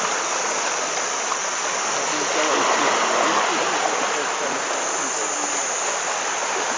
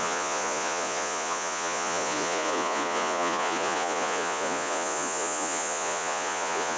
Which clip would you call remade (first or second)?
second